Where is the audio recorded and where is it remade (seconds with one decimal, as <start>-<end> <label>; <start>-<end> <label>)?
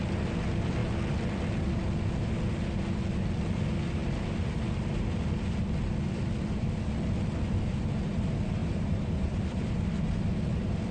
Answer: 0.0-8.6 recorded; 8.6-9.8 remade; 9.8-10.9 recorded